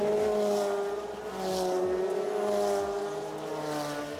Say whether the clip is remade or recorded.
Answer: recorded